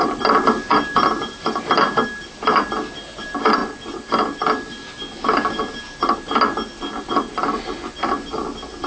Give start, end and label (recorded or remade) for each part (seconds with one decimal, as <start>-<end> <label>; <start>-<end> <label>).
0.0-8.9 recorded